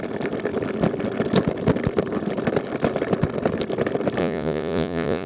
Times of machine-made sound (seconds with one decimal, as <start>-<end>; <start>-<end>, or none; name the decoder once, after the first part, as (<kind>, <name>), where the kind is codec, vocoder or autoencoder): 4.2-5.3 (vocoder, Vocos)